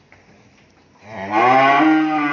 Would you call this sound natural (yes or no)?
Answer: yes